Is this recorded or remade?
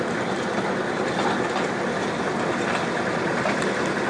recorded